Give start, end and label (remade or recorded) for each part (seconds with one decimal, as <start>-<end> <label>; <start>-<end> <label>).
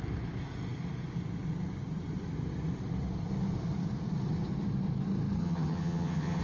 0.0-5.4 recorded; 5.4-6.4 remade